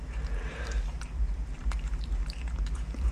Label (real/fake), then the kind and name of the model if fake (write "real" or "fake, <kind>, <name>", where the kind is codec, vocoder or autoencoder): fake, vocoder, BigVGAN v2